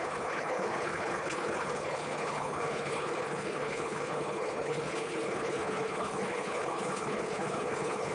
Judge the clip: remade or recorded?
remade